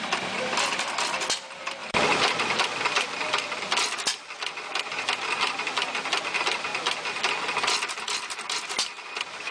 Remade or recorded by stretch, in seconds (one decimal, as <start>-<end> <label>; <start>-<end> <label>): 0.0-9.5 recorded